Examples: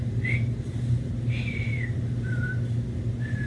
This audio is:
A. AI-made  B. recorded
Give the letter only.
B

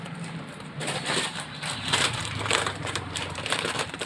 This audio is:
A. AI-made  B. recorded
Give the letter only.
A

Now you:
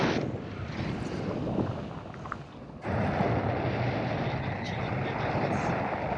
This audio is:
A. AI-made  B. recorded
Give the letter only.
B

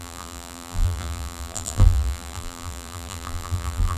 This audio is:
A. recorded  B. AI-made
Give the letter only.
B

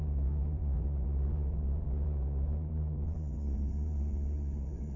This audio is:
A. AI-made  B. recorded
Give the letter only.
A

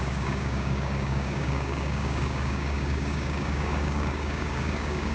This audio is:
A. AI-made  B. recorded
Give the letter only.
A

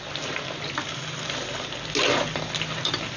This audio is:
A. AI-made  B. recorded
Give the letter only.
B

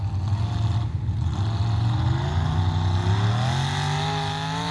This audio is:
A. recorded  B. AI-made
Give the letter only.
A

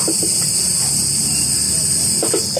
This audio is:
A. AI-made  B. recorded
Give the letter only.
B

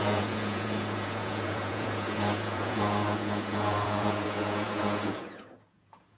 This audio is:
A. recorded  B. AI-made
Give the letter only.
B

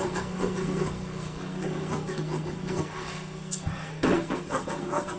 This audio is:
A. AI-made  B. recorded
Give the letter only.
A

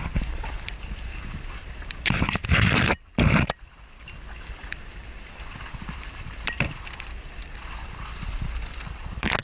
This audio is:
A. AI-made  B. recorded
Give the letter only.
A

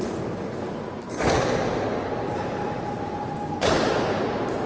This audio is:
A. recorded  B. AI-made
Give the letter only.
A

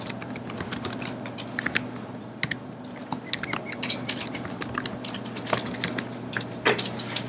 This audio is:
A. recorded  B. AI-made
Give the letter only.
A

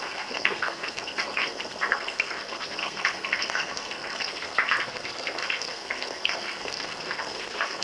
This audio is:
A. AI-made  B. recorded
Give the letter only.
A